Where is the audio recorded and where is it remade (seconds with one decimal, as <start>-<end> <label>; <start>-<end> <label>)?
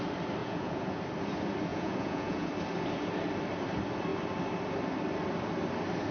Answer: 0.0-0.4 recorded; 0.4-1.0 remade; 1.0-1.7 recorded; 1.7-2.5 remade; 2.5-6.1 recorded